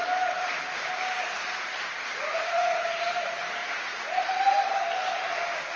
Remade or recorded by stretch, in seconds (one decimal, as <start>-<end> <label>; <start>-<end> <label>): 0.0-2.3 recorded; 2.3-2.9 remade; 2.9-3.6 recorded; 3.6-4.4 remade; 4.4-5.8 recorded